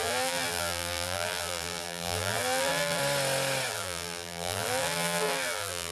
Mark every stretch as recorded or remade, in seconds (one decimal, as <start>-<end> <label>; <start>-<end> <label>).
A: 0.0-3.0 remade; 3.0-3.7 recorded; 3.7-5.9 remade